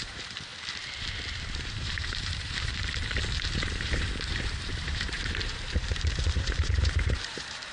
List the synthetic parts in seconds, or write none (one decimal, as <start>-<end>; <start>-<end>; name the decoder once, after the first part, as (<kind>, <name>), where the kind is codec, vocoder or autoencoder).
0.0-0.5 (vocoder, BigVGAN v2); 1.4-2.7; 3.5-7.7